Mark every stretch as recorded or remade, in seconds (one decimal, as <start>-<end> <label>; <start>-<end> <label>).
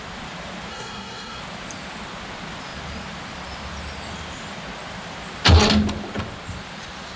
0.0-0.7 recorded; 0.7-1.4 remade; 1.4-7.2 recorded